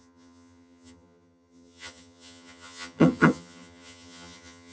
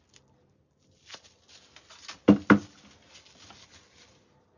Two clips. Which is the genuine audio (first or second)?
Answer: second